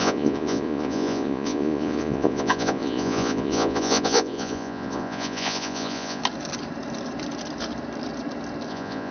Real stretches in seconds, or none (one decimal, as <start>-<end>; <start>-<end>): 6.2-8.7